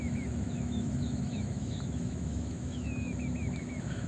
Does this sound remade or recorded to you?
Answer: remade